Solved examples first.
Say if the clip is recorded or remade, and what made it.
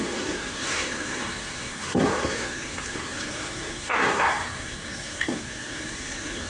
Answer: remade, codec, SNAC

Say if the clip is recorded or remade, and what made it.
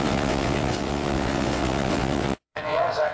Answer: remade, vocoder, WaveNeXt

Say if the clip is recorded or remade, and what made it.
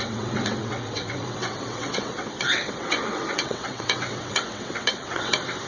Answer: remade, vocoder, WaveNeXt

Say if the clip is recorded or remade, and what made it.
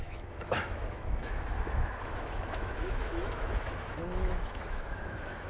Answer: remade, autoencoder, DAC-VAE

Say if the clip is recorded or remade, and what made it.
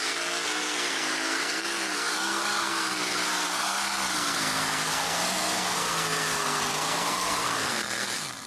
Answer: remade, codec, SNAC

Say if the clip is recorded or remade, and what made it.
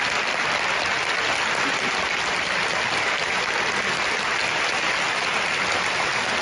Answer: recorded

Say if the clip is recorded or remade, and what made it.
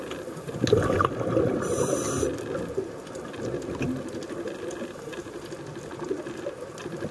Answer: recorded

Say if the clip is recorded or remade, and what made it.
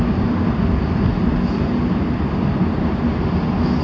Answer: recorded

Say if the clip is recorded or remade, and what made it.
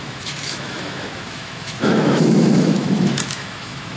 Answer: remade, autoencoder, DAC-VAE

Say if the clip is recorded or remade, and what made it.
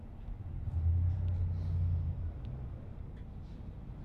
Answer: recorded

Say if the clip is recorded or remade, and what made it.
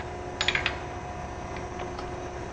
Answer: recorded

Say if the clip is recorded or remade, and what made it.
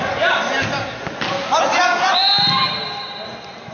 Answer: recorded